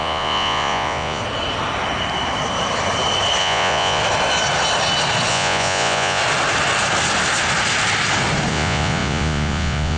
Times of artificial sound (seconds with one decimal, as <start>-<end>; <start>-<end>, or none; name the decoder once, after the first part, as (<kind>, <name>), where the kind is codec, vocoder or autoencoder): 0.0-1.2 (vocoder, Vocos); 3.4-4.0; 5.3-6.2; 8.5-10.0